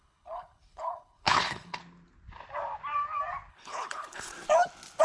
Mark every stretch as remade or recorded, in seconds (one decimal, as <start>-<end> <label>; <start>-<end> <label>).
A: 0.0-1.8 remade; 1.8-3.5 recorded; 3.5-4.3 remade; 4.3-5.0 recorded